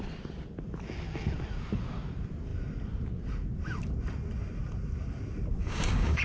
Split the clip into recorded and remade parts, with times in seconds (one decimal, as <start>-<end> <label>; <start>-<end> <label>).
0.0-5.6 recorded; 5.6-6.2 remade